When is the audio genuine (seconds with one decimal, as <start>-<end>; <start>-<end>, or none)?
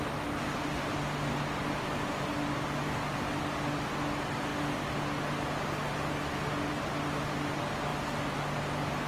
0.0-9.1